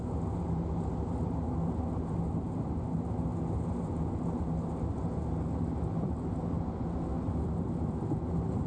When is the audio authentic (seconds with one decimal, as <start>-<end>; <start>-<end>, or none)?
0.0-8.7